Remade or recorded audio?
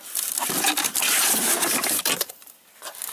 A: remade